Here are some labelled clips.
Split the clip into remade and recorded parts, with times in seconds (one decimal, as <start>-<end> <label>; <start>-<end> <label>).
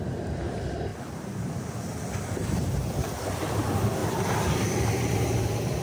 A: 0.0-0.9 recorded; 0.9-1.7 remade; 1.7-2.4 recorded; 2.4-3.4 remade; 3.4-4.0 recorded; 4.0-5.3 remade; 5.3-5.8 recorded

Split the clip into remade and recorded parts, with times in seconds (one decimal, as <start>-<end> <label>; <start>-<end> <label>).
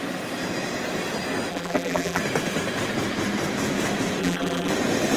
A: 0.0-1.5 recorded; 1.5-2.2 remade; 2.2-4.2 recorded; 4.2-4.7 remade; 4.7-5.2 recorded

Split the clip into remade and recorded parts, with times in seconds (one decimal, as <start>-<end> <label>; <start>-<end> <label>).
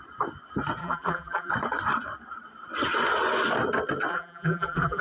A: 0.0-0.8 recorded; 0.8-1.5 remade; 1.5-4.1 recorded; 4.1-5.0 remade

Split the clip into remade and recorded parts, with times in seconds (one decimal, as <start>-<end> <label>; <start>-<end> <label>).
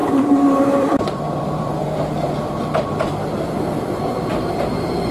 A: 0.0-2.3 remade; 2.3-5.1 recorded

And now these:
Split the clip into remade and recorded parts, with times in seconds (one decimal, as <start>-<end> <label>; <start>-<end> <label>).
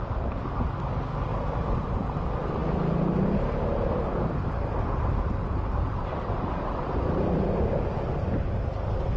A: 0.0-1.3 recorded; 1.3-2.2 remade; 2.2-6.1 recorded; 6.1-7.6 remade; 7.6-9.2 recorded